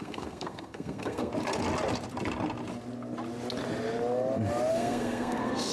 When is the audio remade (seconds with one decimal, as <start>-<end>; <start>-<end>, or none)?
0.0-1.3; 4.7-5.7